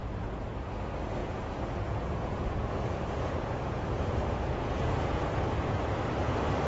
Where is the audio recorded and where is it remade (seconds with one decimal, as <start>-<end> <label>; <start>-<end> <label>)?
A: 0.0-0.6 remade; 0.6-1.2 recorded; 1.2-5.2 remade; 5.2-6.7 recorded